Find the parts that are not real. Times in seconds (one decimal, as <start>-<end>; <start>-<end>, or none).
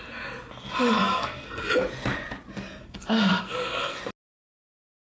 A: 1.0-1.7; 2.8-4.0